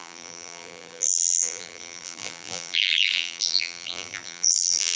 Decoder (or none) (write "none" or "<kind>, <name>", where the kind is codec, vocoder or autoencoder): vocoder, BigVGAN v2